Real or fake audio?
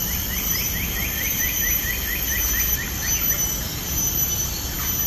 real